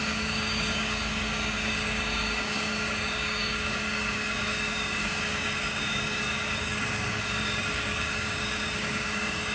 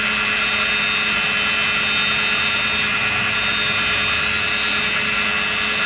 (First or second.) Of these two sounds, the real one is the second